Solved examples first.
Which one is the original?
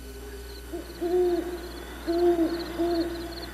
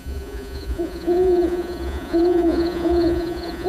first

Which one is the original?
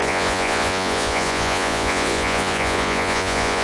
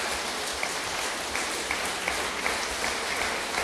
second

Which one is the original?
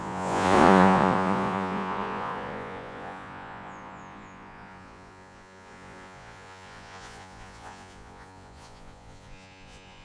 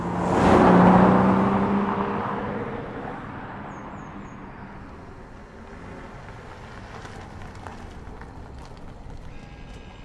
second